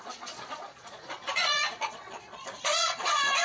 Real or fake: fake